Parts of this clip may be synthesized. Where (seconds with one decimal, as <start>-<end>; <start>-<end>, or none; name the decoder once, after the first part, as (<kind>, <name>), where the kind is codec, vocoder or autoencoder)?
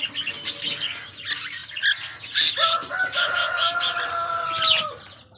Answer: none